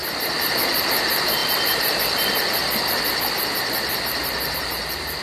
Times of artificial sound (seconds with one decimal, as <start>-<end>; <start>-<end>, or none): none